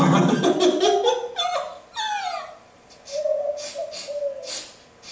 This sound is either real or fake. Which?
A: real